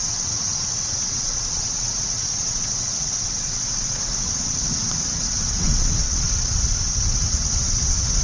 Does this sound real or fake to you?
fake